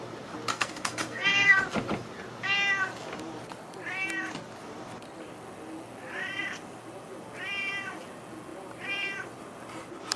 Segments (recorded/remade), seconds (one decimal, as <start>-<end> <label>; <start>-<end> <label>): 0.0-0.5 recorded; 0.5-1.6 remade; 1.6-10.2 recorded